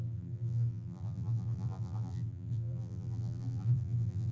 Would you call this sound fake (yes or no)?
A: yes